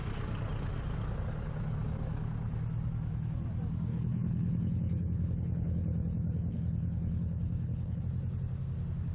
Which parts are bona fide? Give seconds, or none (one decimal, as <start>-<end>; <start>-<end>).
0.0-3.9; 8.0-9.1